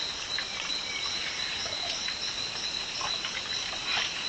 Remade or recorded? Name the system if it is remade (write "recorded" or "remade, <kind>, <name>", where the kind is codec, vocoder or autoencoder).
recorded